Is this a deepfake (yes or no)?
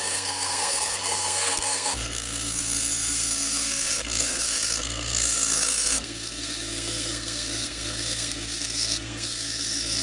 yes